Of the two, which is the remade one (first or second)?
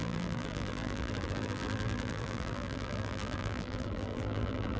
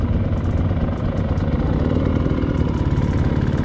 first